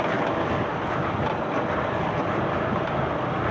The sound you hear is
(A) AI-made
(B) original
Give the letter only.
B